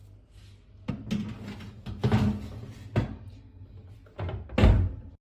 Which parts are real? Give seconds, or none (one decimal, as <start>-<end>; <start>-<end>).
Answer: 0.0-5.3